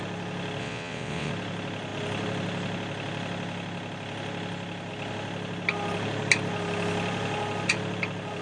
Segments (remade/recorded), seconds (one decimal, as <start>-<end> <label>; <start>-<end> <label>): 0.0-0.6 recorded; 0.6-1.3 remade; 1.3-8.4 recorded